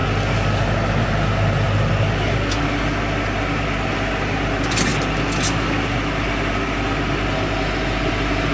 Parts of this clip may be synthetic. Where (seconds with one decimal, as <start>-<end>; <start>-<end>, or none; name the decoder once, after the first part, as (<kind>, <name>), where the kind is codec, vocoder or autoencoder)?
none